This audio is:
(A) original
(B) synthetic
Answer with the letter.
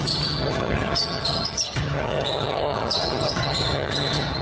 B